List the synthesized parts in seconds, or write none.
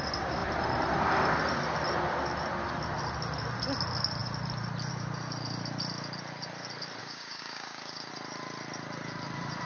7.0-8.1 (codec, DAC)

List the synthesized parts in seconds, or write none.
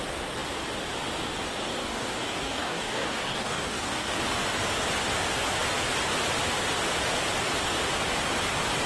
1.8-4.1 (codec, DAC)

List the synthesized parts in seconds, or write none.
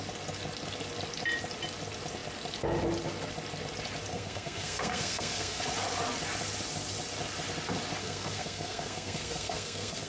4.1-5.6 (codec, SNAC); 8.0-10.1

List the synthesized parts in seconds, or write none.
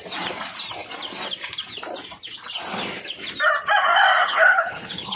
4.2-5.2 (codec, HILCodec)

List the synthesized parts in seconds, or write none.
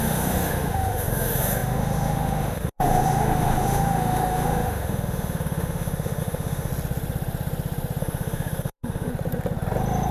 0.0-6.7 (autoencoder, DAC-VAE); 8.0-9.1